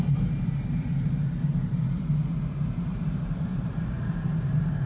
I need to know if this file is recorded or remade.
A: remade